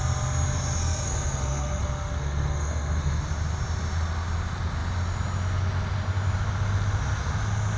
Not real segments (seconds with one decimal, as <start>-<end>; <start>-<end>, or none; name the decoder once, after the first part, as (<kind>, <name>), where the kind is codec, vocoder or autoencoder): 0.8-3.2 (codec, SNAC)